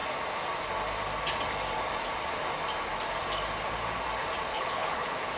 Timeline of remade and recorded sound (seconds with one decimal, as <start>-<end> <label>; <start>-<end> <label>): 0.0-4.5 recorded; 4.5-5.4 remade